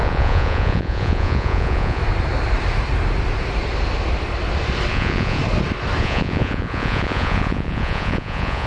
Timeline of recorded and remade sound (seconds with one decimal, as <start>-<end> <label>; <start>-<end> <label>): 0.0-2.0 remade; 2.0-4.9 recorded; 4.9-5.4 remade; 5.4-6.0 recorded; 6.0-8.7 remade